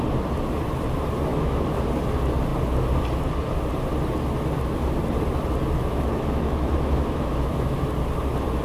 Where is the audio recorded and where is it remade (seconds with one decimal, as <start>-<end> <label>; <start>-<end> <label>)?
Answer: 0.0-1.3 recorded; 1.3-1.8 remade; 1.8-5.8 recorded; 5.8-7.8 remade; 7.8-8.6 recorded